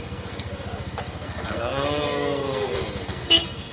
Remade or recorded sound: remade